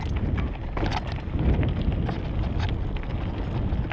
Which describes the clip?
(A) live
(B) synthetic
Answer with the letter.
A